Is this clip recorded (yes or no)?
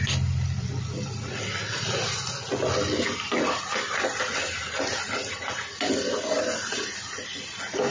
yes